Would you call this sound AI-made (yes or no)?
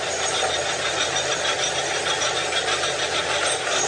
no